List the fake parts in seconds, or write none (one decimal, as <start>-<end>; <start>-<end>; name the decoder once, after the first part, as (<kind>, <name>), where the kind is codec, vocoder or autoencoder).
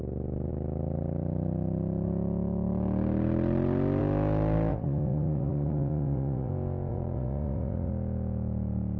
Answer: 4.7-6.5 (vocoder, Vocos); 6.9-7.9